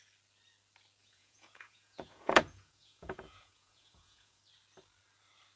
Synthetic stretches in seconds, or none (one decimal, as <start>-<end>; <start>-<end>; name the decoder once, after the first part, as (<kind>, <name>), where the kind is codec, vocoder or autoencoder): 1.0-4.4 (vocoder, Vocos)